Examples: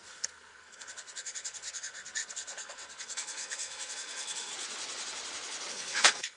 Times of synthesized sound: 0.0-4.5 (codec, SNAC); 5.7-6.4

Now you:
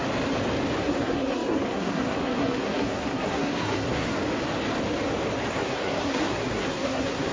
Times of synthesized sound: 0.8-4.2 (codec, SNAC); 5.5-7.3

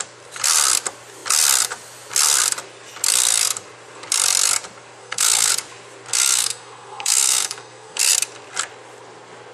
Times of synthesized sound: 5.0-5.5 (codec, SNAC); 6.1-8.0